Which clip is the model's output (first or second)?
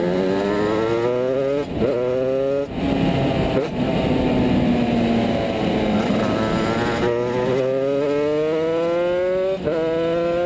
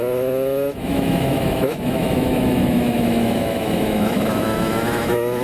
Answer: second